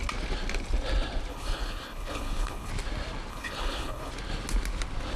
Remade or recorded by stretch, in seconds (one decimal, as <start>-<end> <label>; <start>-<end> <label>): 0.0-1.3 recorded; 1.3-2.7 remade; 2.7-3.3 recorded; 3.3-4.1 remade; 4.1-5.2 recorded